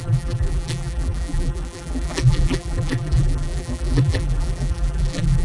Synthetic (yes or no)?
yes